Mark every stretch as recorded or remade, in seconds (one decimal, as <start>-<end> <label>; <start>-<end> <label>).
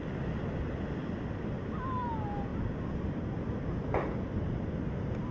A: 0.0-5.3 recorded